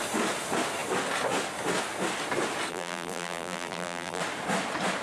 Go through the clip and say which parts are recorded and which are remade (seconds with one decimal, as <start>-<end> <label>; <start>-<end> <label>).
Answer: 0.0-2.7 recorded; 2.7-4.2 remade; 4.2-5.0 recorded